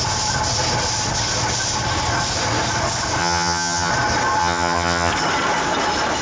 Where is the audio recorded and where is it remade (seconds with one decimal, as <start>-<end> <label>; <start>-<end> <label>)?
0.0-3.2 recorded; 3.2-3.9 remade; 3.9-4.4 recorded; 4.4-5.1 remade; 5.1-6.2 recorded